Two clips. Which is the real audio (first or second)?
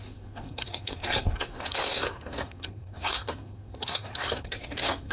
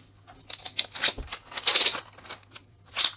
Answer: second